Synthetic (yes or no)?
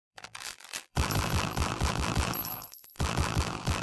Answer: yes